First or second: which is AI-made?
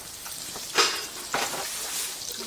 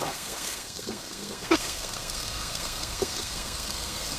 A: second